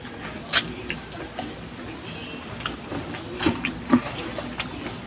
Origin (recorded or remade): recorded